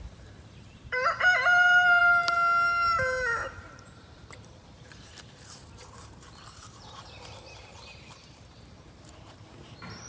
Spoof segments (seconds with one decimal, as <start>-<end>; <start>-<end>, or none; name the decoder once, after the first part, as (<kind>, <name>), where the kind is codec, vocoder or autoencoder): 0.0-10.1 (vocoder, BigVGAN v2)